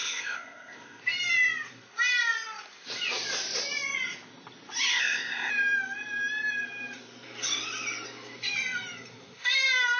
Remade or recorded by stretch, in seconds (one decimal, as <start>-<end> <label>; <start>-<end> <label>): 0.0-1.0 remade; 1.0-4.9 recorded; 4.9-5.5 remade; 5.5-10.0 recorded